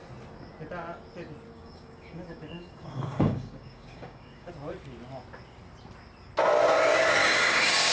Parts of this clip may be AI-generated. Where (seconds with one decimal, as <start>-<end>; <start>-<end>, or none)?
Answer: 1.5-4.5; 7.2-7.9